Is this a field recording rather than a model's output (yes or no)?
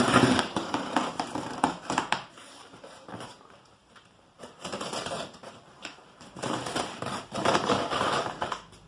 no